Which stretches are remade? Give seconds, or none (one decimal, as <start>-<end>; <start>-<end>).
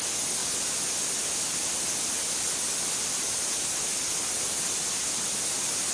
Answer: none